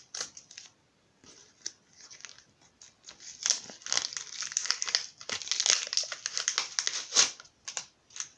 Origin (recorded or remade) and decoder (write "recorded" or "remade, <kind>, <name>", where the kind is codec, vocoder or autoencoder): recorded